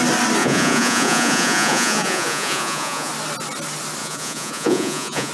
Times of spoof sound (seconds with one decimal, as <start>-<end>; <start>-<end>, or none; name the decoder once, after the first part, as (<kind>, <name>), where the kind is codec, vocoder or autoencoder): 0.4-3.1 (vocoder, Vocos); 4.0-5.3